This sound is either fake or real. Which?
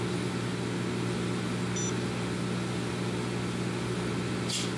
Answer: real